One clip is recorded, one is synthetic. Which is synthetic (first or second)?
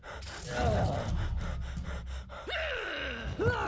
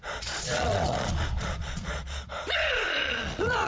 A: second